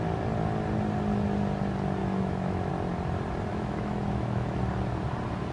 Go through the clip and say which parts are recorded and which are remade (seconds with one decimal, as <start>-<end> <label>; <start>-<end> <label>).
0.0-2.0 recorded; 2.0-2.7 remade; 2.7-3.5 recorded; 3.5-4.6 remade; 4.6-5.5 recorded